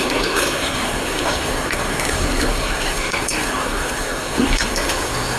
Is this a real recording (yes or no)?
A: no